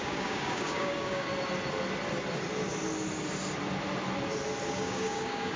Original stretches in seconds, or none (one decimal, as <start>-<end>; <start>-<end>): 1.3-4.7

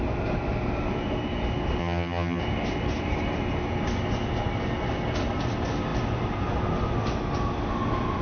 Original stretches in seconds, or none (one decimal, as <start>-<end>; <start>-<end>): 0.0-1.8; 2.4-8.2

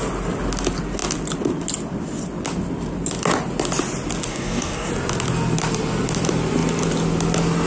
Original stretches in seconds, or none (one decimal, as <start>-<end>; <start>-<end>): 0.0-4.3; 4.9-7.7

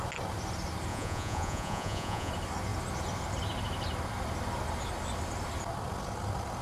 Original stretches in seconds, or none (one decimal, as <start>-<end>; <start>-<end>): 0.0-0.9; 2.3-6.6

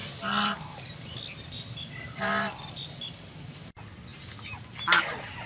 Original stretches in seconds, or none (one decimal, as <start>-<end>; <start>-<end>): 0.0-5.5

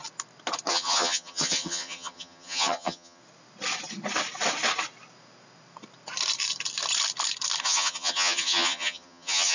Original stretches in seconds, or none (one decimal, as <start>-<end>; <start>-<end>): 0.0-0.7; 3.2-7.6